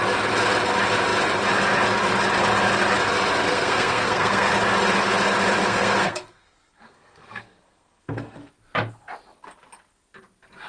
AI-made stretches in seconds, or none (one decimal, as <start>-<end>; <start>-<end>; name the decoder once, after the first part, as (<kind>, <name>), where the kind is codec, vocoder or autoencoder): 3.5-4.5 (codec, SNAC); 5.6-8.5